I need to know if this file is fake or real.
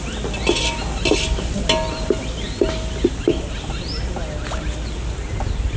real